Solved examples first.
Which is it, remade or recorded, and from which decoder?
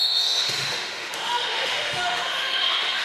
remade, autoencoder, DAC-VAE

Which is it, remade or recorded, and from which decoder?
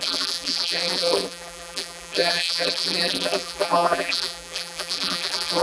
remade, vocoder, BigVGAN v2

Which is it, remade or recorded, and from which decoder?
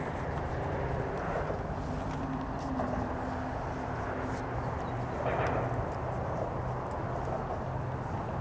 recorded